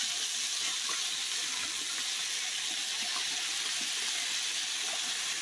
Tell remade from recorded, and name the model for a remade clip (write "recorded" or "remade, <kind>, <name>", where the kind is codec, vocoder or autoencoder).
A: recorded